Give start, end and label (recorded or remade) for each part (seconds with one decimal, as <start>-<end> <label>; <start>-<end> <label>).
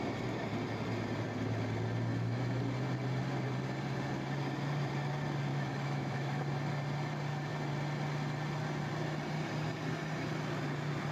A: 0.0-2.1 recorded; 2.1-2.6 remade; 2.6-5.5 recorded; 5.5-6.4 remade; 6.4-11.1 recorded